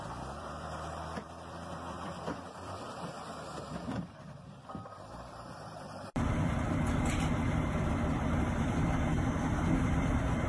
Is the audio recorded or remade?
remade